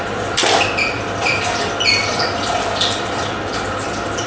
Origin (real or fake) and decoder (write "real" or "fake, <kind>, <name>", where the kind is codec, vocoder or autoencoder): fake, vocoder, BigVGAN v2